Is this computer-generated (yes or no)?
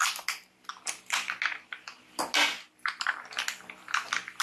no